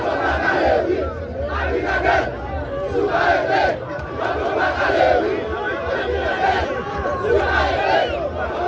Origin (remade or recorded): recorded